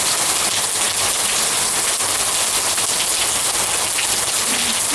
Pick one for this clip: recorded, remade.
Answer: recorded